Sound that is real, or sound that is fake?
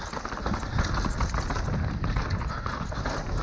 real